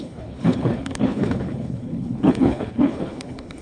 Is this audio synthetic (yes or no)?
yes